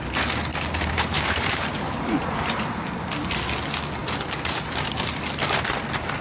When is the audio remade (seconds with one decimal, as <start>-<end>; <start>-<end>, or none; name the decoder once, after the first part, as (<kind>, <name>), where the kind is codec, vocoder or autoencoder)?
0.5-2.9 (vocoder, BigVGAN v2)